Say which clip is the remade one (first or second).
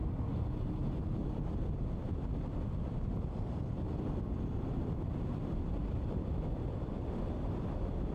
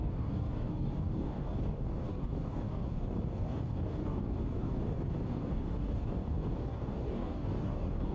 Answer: second